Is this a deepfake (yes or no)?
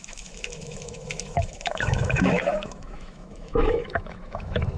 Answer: yes